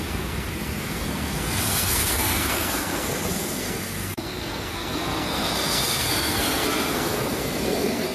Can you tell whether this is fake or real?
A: fake